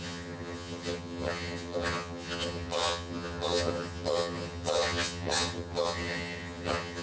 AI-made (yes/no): yes